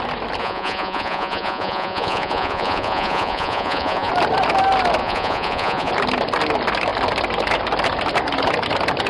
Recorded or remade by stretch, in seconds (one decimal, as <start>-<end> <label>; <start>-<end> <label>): 0.0-0.4 recorded; 0.4-4.1 remade; 4.1-5.0 recorded; 5.0-5.9 remade; 5.9-9.1 recorded

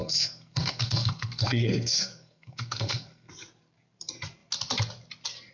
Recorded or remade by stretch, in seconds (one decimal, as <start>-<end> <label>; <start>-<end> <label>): 0.0-3.3 remade; 3.3-5.5 recorded

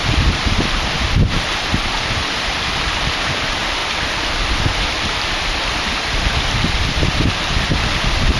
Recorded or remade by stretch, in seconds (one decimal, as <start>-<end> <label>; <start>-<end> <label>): 0.0-3.8 remade; 3.8-7.5 recorded; 7.5-8.4 remade

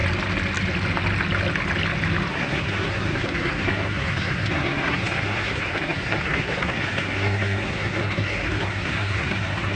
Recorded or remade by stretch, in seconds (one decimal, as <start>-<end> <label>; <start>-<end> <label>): 0.0-2.3 recorded; 2.3-9.8 remade